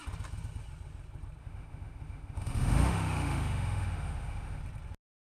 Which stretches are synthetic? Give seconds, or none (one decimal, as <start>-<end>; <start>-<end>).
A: 1.4-4.6